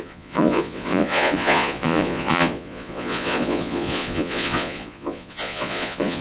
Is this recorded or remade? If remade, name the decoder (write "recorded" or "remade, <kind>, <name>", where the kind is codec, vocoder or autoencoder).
remade, vocoder, Vocos